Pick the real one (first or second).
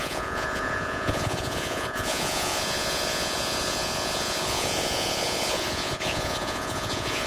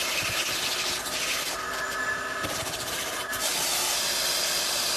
second